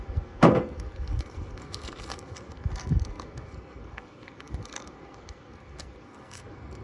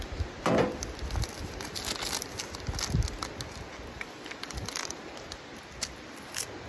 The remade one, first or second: first